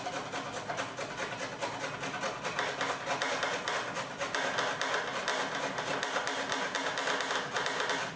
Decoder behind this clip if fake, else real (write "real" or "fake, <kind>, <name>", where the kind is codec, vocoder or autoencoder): real